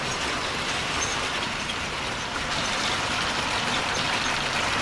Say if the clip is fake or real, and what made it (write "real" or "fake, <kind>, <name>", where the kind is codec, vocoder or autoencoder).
fake, vocoder, BigVGAN v2